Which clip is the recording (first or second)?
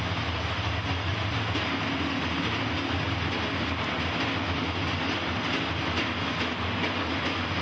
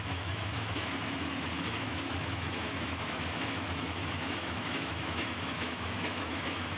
first